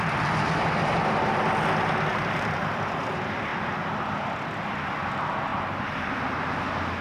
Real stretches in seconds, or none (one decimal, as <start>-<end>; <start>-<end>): 0.0-2.1; 2.6-5.5; 6.1-7.0